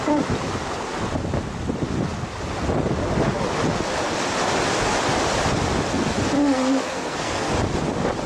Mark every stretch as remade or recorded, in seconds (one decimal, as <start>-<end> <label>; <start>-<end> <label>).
0.0-6.4 recorded; 6.4-7.5 remade; 7.5-8.3 recorded